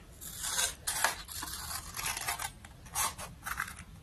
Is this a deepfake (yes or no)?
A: no